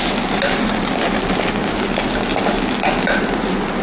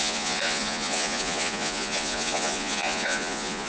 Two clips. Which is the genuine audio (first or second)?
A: first